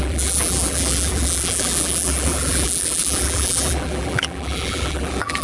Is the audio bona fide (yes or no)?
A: no